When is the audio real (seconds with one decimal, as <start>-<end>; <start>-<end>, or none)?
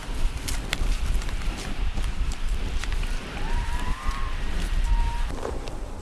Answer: none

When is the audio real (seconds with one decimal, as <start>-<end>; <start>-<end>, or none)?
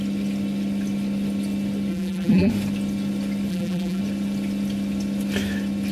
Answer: 0.0-1.9; 2.5-3.5; 4.0-5.9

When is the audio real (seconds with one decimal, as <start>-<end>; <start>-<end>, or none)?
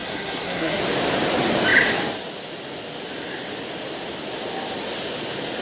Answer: 0.8-5.6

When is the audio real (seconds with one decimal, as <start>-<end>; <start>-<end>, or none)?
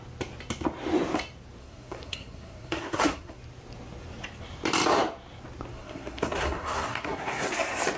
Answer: 0.0-1.6; 3.4-5.7; 7.5-8.0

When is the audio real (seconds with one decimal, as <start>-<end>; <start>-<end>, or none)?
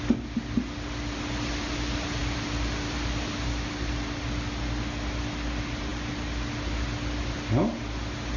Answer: 0.0-8.4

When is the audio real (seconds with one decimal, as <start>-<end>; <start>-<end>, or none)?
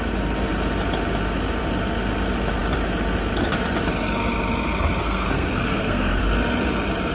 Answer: 0.0-5.0; 6.2-7.1